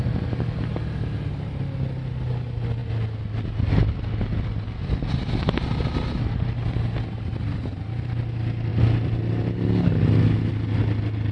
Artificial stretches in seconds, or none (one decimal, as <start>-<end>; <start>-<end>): none